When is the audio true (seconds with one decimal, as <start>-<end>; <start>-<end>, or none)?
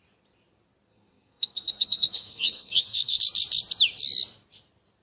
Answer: 0.0-0.9; 3.2-5.0